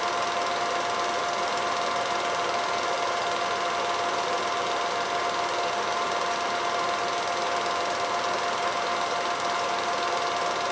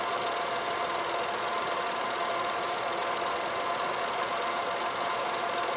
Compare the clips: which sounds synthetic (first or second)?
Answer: second